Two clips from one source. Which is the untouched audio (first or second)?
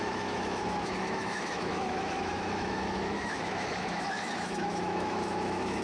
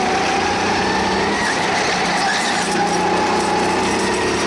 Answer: second